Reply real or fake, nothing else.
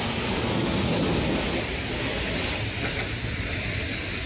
real